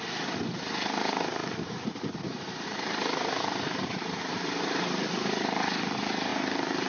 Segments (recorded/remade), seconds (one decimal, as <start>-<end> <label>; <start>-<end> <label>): 0.0-1.4 recorded; 1.4-5.1 remade; 5.1-6.9 recorded